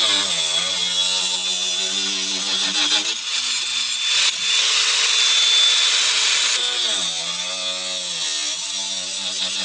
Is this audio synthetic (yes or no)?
no